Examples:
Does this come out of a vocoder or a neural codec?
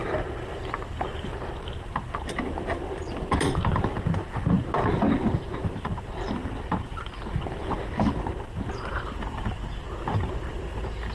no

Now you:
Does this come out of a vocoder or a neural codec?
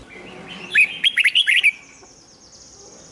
no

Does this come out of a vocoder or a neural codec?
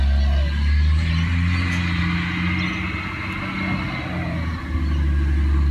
no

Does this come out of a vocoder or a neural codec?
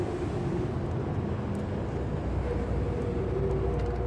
no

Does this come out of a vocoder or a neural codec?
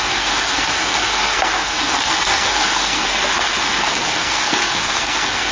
yes